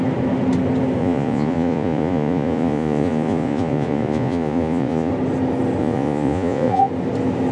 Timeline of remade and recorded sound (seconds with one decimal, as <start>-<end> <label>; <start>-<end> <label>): 0.0-1.0 recorded; 1.0-5.1 remade; 5.1-5.8 recorded; 5.8-6.9 remade; 6.9-7.5 recorded